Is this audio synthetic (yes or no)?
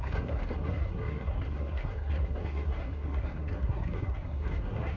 yes